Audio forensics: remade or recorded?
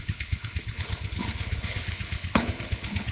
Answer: remade